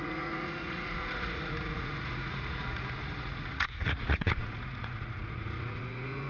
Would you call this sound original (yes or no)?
no